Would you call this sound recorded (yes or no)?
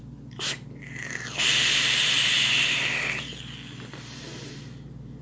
yes